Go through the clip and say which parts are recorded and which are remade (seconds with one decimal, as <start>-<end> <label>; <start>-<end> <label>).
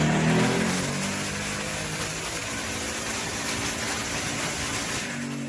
0.0-5.5 recorded